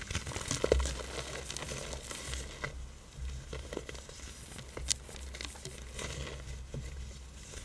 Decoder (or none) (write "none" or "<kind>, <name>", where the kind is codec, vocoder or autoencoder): none